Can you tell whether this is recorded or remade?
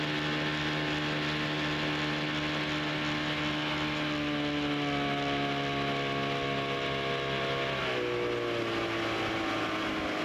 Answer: recorded